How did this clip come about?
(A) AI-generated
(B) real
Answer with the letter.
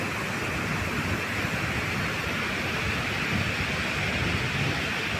B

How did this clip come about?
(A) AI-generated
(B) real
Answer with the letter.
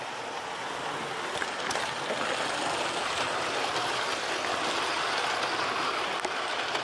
B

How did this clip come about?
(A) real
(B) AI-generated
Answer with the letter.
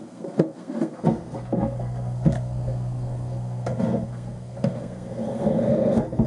B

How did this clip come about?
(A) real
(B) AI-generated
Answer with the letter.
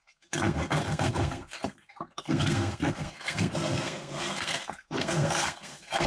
B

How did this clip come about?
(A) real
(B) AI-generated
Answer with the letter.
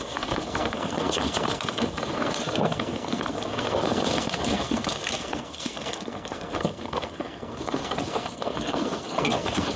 B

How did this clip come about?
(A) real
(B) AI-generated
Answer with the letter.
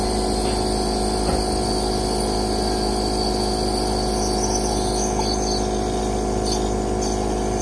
A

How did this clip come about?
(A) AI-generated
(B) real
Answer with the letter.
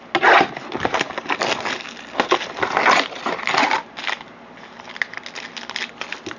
B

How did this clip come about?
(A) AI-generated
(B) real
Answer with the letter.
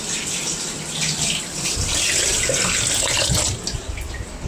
B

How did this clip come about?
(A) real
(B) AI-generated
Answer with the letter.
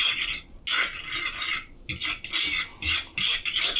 A